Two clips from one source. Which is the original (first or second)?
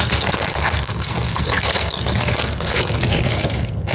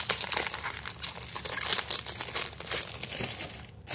second